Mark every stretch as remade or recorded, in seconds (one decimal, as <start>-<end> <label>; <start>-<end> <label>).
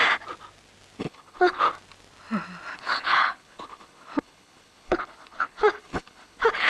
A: 0.0-1.0 recorded; 1.0-1.6 remade; 1.6-2.7 recorded; 2.7-6.7 remade